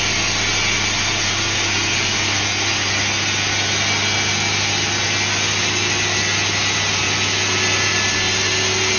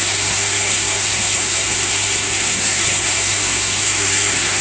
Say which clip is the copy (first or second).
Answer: second